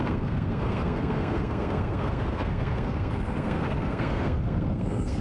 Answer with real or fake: fake